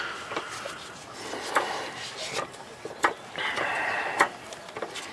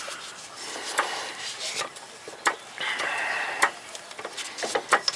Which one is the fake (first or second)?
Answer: second